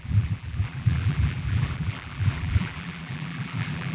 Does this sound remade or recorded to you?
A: remade